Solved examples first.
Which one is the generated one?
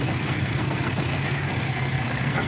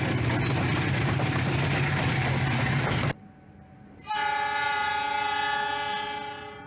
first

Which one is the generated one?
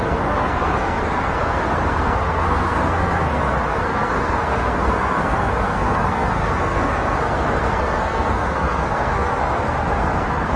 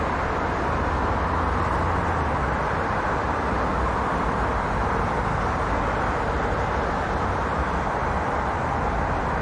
first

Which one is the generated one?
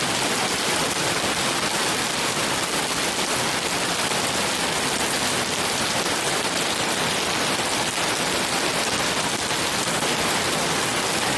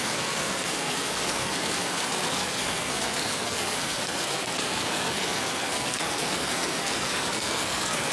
second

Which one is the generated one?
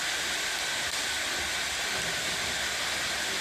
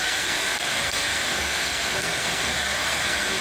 second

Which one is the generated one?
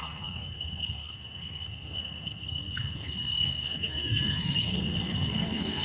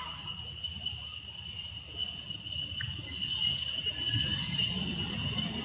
first